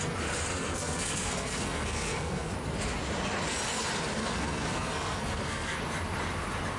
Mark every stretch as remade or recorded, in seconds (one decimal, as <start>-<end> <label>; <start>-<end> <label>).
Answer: 0.0-0.5 recorded; 0.5-2.5 remade; 2.5-4.2 recorded; 4.2-5.8 remade; 5.8-6.8 recorded